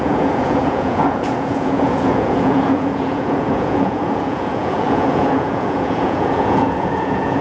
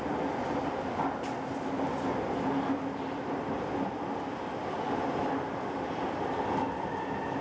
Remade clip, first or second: first